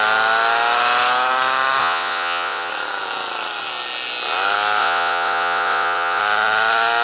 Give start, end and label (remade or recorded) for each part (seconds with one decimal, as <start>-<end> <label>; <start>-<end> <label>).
0.0-1.8 recorded; 1.8-2.7 remade; 2.7-4.8 recorded; 4.8-6.2 remade; 6.2-7.0 recorded